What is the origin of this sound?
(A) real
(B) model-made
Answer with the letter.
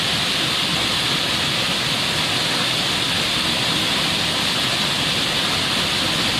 A